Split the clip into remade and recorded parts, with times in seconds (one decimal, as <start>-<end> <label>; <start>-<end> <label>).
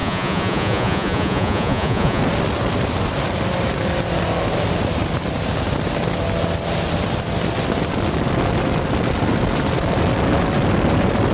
0.0-2.2 remade; 2.2-11.3 recorded